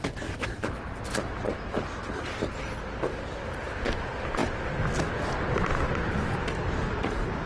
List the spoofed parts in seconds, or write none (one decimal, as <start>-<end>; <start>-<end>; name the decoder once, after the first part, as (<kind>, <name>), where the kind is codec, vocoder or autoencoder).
none